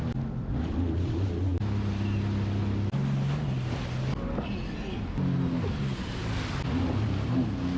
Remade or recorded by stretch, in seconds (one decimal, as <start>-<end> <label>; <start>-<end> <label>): 0.0-7.8 recorded